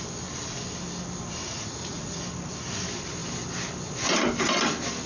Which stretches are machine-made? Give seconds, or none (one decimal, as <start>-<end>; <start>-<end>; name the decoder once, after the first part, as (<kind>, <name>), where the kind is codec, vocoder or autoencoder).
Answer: 1.4-2.2 (vocoder, Vocos)